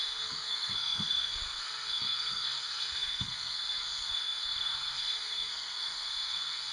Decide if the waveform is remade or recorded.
remade